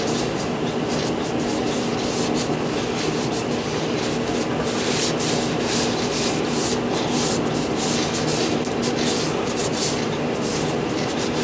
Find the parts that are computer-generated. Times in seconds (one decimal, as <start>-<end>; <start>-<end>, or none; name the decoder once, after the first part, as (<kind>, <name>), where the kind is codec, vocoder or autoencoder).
none